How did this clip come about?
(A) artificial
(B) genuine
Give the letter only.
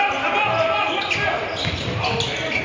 B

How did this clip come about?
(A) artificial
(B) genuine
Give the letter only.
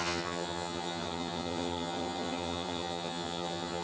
A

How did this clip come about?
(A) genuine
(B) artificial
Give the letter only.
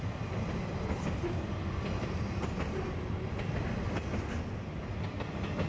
A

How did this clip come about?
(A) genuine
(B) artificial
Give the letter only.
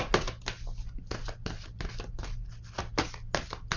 A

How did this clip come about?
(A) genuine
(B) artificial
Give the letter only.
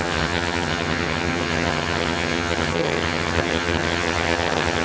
B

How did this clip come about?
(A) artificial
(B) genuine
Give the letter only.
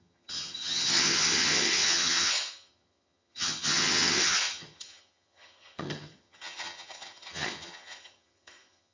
A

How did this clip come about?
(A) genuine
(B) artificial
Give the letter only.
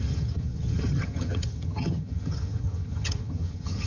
B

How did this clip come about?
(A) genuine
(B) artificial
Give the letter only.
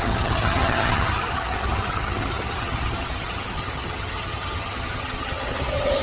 B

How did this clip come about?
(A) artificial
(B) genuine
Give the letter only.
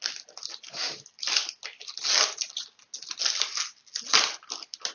B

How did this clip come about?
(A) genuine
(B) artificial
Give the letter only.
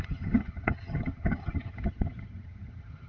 B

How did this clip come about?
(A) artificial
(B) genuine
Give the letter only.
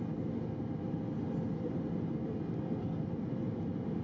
B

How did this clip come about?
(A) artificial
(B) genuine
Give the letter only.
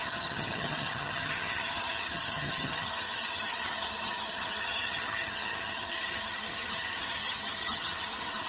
A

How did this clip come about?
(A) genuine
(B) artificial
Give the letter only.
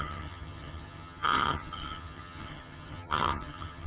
B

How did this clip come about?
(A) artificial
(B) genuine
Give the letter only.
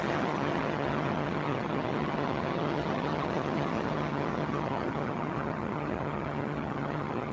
A